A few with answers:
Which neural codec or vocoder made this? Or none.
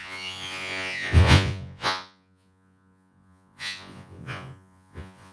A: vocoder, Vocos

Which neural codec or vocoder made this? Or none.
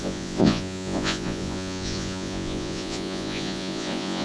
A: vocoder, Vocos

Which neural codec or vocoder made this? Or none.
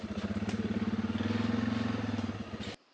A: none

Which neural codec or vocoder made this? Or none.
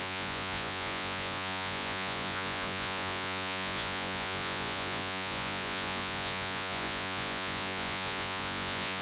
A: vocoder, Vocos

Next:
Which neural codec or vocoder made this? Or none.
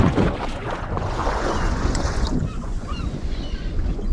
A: vocoder, Vocos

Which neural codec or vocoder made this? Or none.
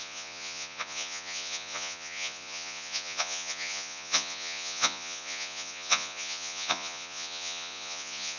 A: vocoder, Vocos